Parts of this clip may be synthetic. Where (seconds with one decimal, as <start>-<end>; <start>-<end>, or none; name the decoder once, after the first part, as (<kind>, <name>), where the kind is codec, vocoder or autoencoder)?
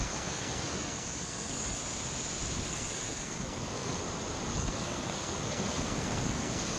0.0-1.8 (codec, SNAC); 2.7-4.0; 4.5-6.8